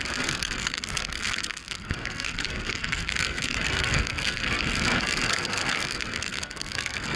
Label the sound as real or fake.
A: fake